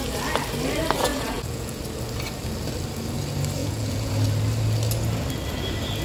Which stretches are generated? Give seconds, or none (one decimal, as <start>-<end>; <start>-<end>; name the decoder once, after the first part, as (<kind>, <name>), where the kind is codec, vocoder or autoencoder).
1.1-1.8 (vocoder, Vocos); 3.6-4.1